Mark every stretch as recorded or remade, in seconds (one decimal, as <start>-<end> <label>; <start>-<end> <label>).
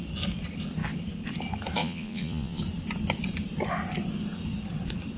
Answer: 0.0-1.8 recorded; 1.8-2.6 remade; 2.6-5.2 recorded